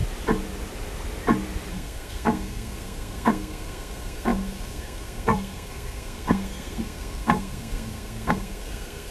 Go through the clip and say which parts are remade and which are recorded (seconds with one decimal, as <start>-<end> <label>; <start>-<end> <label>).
0.0-1.7 recorded; 1.7-9.1 remade